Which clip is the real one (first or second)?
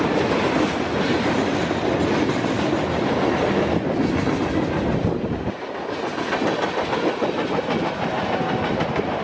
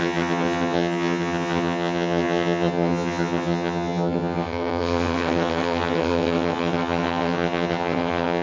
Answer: first